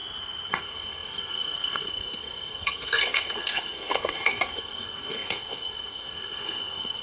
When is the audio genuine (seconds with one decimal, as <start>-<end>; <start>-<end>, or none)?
0.0-0.5

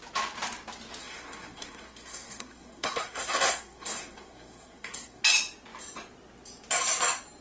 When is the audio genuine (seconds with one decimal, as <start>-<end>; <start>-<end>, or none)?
0.0-1.0; 5.2-7.4